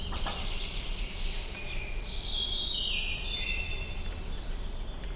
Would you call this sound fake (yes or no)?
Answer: no